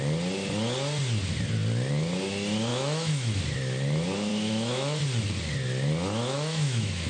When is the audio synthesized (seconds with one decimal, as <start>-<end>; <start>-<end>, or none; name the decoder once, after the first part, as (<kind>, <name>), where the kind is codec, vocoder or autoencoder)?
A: 2.7-3.4 (autoencoder, DAC-VAE); 4.3-5.0; 6.2-7.1